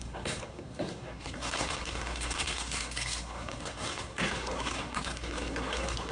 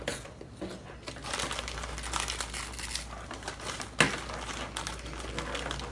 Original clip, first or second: second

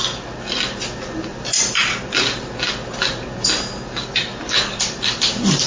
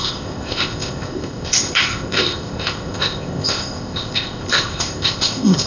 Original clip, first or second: first